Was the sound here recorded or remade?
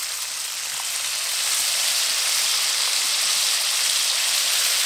recorded